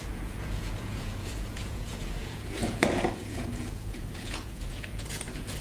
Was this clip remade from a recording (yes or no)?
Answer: yes